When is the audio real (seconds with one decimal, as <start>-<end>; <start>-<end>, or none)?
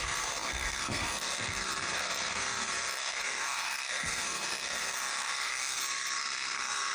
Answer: none